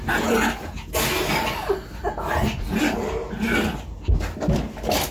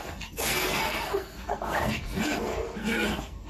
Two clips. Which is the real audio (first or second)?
first